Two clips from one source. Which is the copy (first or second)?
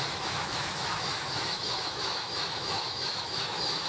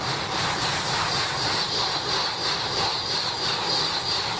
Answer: first